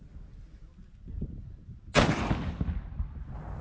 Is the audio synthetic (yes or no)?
no